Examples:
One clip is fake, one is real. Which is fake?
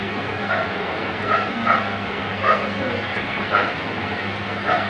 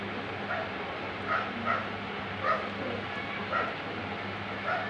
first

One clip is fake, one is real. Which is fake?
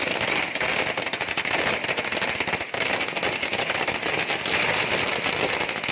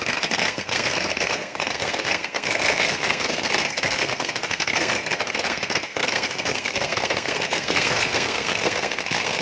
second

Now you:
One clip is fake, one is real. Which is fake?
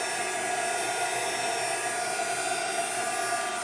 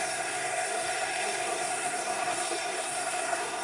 second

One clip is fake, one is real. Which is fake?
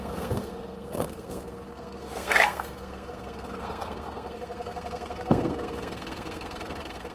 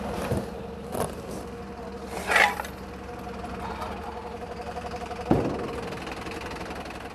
first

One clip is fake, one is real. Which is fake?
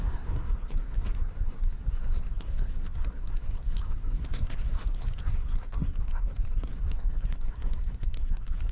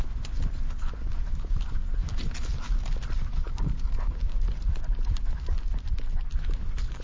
first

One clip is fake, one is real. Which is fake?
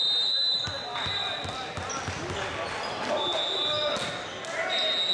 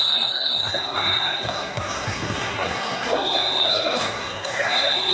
second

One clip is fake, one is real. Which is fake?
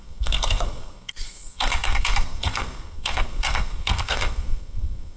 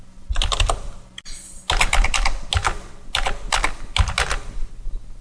first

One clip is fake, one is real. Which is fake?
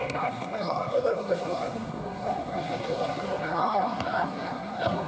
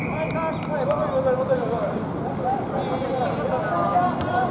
first